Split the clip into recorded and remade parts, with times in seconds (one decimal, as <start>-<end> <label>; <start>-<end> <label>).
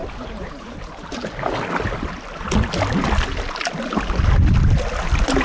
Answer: 0.0-1.1 remade; 1.1-5.4 recorded